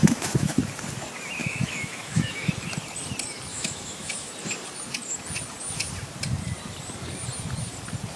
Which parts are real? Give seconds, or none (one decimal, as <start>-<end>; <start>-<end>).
0.6-1.4; 2.5-3.5; 4.3-8.2